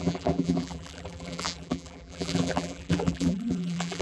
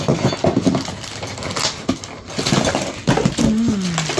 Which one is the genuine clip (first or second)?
second